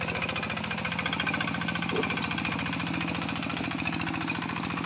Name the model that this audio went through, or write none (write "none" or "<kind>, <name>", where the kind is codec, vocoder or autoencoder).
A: none